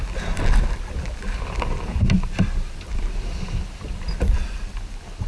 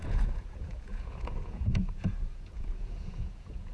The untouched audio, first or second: first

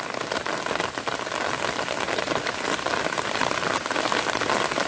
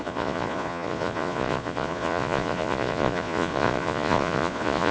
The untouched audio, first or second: first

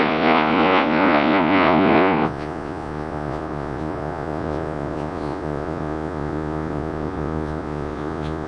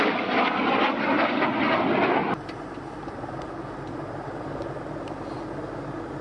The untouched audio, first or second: second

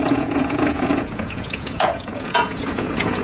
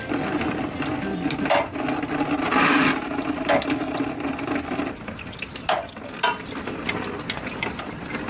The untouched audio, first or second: second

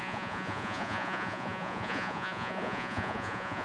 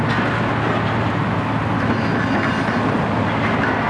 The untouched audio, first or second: second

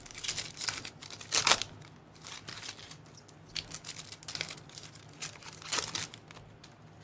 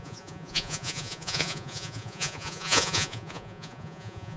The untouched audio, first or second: first